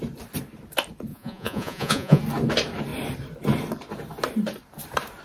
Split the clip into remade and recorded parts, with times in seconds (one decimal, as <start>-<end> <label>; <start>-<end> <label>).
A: 0.0-1.1 recorded; 1.1-2.2 remade; 2.2-5.2 recorded